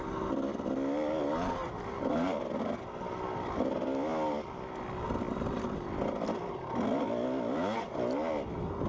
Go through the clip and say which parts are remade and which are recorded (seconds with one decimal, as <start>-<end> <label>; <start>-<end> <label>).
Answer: 0.0-8.9 recorded